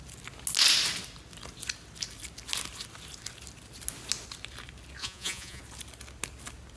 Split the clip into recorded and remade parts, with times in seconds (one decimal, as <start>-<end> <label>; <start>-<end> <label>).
0.0-5.0 recorded; 5.0-5.6 remade; 5.6-6.8 recorded